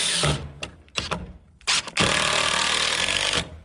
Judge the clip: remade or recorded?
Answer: recorded